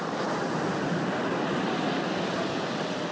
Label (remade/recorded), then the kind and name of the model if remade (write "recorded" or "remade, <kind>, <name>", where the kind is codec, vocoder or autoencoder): recorded